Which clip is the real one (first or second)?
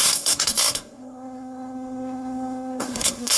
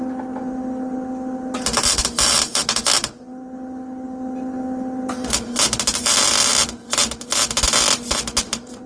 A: second